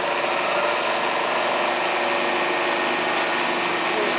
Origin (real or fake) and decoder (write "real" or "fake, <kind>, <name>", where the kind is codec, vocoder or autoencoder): real